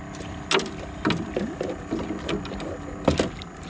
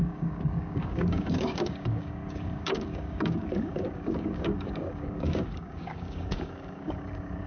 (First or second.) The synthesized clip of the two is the second